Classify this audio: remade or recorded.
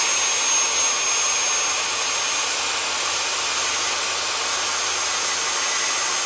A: recorded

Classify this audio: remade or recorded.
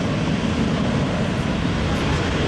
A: recorded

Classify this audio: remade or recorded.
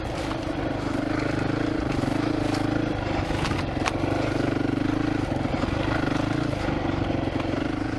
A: recorded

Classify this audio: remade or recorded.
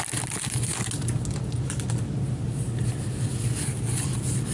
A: recorded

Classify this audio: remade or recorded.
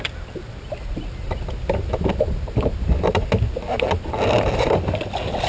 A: recorded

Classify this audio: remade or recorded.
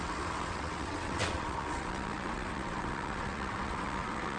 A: remade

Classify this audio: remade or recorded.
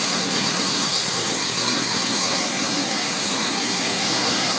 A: remade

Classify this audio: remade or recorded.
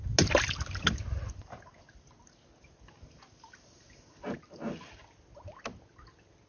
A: recorded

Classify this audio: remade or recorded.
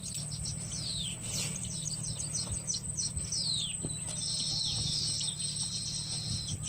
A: recorded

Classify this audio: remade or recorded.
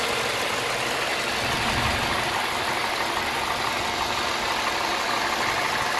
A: recorded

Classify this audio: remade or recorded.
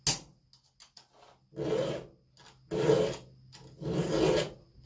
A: recorded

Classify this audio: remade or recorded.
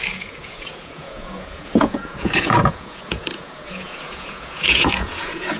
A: remade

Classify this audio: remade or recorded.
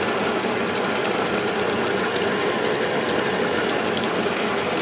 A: recorded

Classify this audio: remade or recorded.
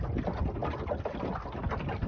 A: recorded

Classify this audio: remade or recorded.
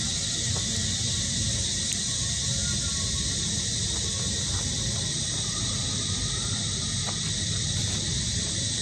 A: recorded